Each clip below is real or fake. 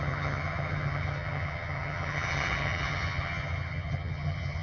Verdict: fake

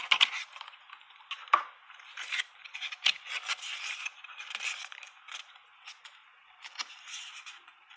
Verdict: real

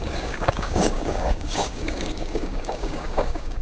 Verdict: fake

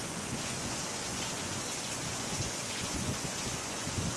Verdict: fake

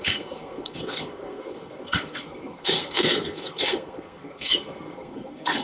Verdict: fake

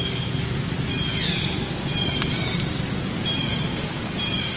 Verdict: real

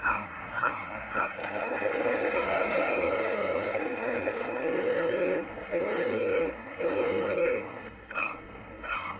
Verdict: fake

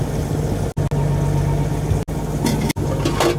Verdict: real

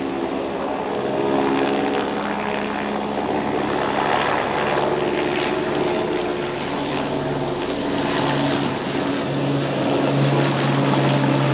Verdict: real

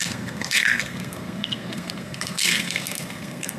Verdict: fake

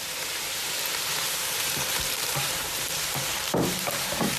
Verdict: fake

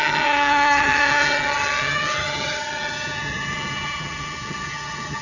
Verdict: fake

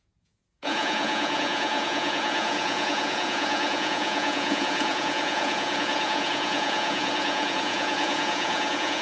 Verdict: fake